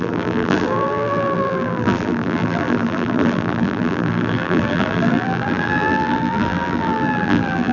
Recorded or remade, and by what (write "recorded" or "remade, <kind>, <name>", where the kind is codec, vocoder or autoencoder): remade, vocoder, BigVGAN v2